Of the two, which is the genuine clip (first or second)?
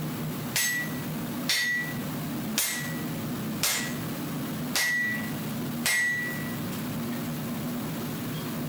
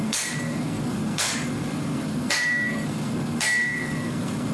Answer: first